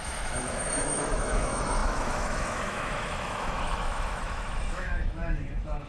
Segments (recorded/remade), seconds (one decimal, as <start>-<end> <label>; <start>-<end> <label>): 0.0-5.9 remade